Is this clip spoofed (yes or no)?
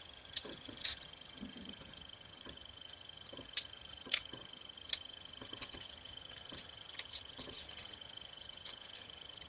yes